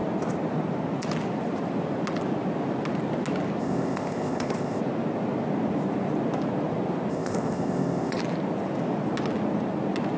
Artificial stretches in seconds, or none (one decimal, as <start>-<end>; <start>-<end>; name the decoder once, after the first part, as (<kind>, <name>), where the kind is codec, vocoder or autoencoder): 3.6-4.8 (codec, ZipCodec); 7.1-8.2